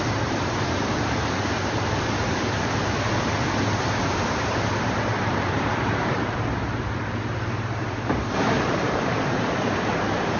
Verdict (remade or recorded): remade